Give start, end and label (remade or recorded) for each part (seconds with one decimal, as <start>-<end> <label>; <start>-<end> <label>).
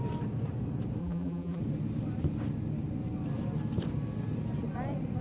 0.0-1.0 recorded; 1.0-1.6 remade; 1.6-5.2 recorded